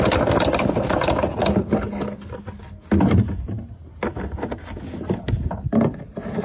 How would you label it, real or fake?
real